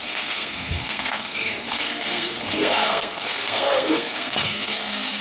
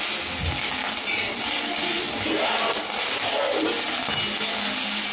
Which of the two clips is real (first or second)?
second